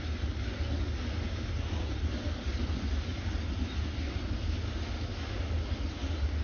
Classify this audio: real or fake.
real